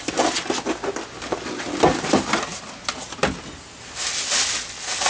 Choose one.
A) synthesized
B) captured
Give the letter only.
B